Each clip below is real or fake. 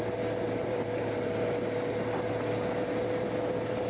real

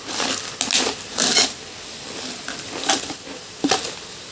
real